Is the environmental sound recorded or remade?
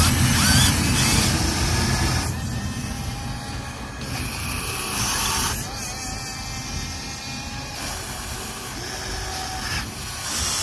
recorded